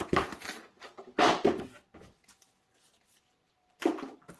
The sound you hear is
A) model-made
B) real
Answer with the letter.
B